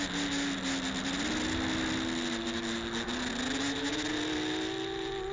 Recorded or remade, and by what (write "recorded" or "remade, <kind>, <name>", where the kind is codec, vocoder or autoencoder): recorded